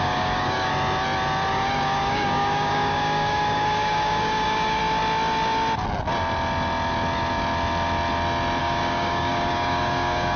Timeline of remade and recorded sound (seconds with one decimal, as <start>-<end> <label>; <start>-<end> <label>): 0.0-0.7 remade; 0.7-1.5 recorded; 1.5-4.8 remade; 4.8-8.6 recorded; 8.6-10.4 remade